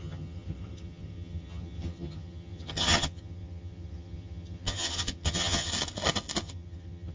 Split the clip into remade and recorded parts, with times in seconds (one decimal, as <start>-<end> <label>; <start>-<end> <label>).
0.0-5.7 remade; 5.7-6.4 recorded; 6.4-7.1 remade